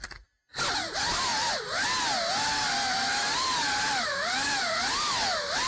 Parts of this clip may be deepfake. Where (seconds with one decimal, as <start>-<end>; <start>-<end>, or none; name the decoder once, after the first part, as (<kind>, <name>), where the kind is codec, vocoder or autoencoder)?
none

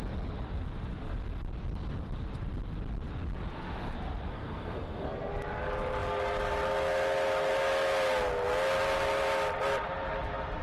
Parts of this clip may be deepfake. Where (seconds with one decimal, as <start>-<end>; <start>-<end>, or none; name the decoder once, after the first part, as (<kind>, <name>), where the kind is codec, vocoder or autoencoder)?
4.3-5.3 (codec, SNAC)

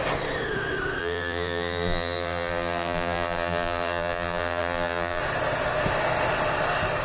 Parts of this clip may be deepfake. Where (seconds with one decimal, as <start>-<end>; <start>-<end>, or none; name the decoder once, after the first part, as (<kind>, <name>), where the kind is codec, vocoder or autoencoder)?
1.0-5.2 (vocoder, BigVGAN v2)

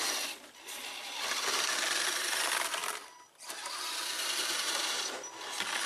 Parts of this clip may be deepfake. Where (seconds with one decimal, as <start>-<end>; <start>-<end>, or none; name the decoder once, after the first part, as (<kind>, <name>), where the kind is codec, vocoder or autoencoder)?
none

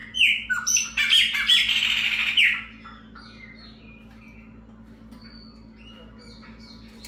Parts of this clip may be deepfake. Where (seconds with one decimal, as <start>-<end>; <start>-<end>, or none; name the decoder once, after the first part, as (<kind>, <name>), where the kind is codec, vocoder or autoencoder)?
none

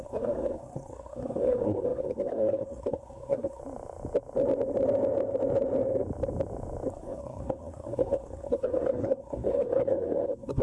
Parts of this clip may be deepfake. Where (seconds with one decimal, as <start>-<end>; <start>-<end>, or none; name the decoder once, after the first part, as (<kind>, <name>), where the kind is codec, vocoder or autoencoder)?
0.0-3.6 (codec, SNAC); 6.9-10.6